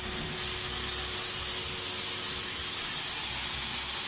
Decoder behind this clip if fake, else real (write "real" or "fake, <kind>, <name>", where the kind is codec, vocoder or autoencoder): real